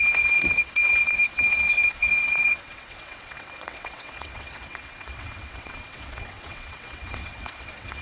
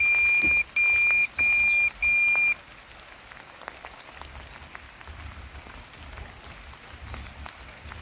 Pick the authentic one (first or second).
second